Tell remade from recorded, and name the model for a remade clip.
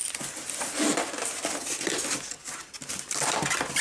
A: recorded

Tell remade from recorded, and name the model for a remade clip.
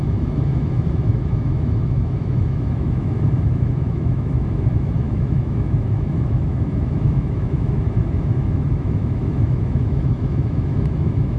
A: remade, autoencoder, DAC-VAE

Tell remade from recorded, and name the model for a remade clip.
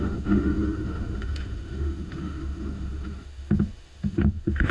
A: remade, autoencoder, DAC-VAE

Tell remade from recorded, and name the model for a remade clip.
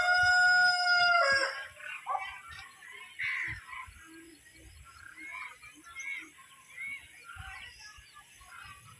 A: recorded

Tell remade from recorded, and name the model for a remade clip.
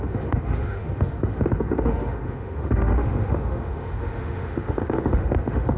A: remade, autoencoder, DAC-VAE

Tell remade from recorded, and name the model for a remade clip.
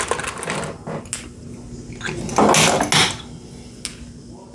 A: recorded